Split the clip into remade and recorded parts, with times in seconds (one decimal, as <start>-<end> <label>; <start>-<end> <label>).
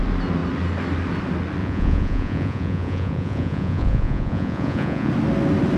0.0-1.6 recorded; 1.6-5.1 remade; 5.1-5.8 recorded